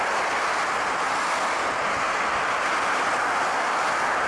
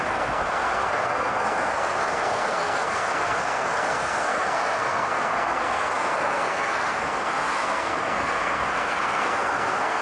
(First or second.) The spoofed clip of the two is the second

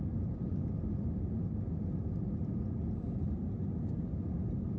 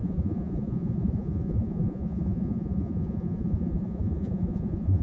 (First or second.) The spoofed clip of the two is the second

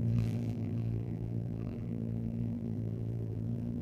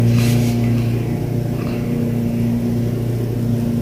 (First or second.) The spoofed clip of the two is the first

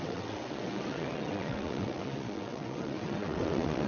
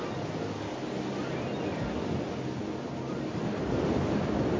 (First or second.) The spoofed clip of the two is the first